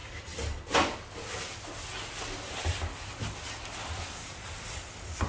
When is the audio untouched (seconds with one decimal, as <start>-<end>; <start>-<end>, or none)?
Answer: 0.0-5.3